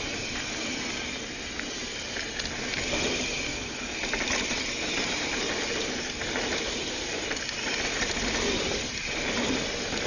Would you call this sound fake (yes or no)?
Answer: no